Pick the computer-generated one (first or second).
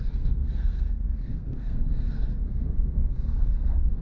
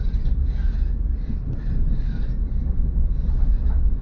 first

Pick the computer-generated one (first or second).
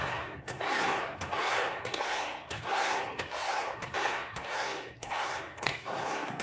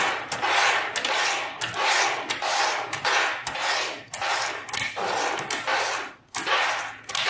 first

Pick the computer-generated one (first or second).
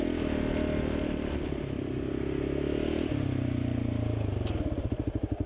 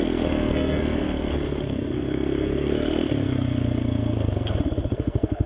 second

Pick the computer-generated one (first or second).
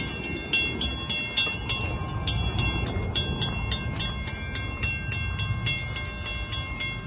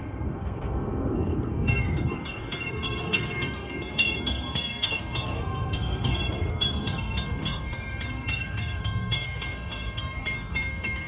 second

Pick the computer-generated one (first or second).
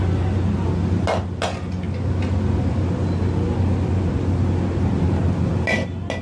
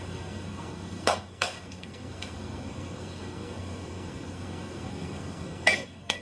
second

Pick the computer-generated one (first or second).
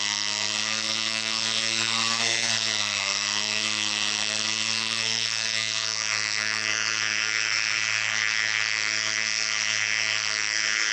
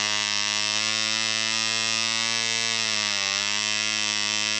first